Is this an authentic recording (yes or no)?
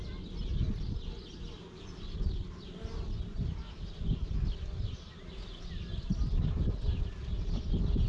yes